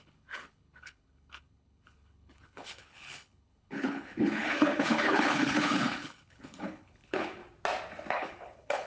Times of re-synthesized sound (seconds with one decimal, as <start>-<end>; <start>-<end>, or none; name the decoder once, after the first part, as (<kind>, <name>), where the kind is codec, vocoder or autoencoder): 0.0-7.4 (codec, HILCodec); 8.1-8.9